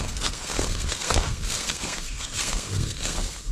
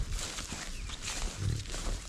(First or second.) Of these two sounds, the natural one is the second